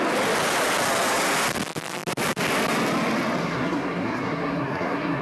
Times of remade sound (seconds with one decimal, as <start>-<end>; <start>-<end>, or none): 3.4-5.2